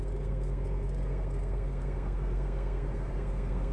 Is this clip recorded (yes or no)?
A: no